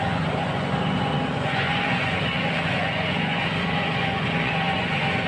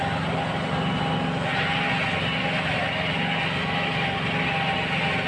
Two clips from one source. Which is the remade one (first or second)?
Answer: first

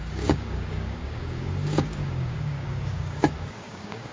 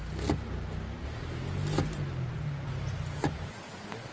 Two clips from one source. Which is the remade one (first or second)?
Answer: first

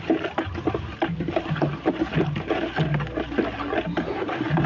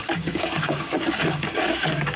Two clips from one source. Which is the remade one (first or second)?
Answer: second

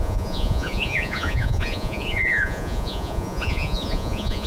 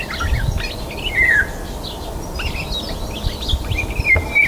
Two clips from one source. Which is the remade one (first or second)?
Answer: first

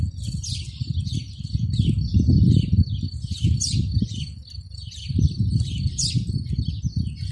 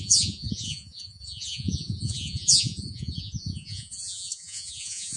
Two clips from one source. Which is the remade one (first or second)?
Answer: second